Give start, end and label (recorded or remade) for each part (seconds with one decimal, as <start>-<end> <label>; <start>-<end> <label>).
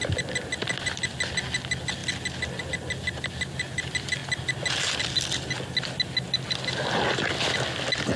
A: 0.0-8.2 recorded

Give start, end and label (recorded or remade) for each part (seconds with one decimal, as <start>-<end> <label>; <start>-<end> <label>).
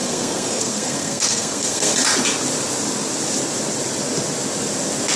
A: 0.0-1.9 remade; 1.9-5.2 recorded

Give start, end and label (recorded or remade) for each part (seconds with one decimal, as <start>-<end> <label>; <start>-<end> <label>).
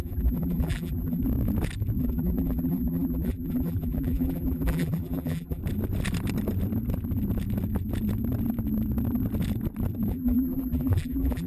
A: 0.0-1.2 remade; 1.2-2.0 recorded; 2.0-5.6 remade; 5.6-10.1 recorded; 10.1-11.5 remade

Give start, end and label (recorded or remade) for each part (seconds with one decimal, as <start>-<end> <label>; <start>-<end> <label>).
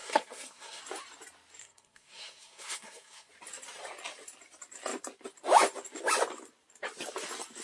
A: 0.0-0.8 remade; 0.8-1.6 recorded; 1.6-3.3 remade; 3.3-7.6 recorded